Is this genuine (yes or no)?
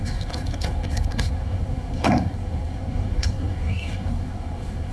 no